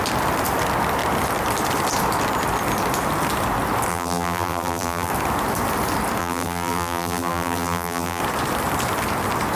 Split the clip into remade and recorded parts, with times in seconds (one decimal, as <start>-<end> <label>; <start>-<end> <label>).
0.0-3.9 recorded; 3.9-5.1 remade; 5.1-6.2 recorded; 6.2-8.2 remade; 8.2-9.6 recorded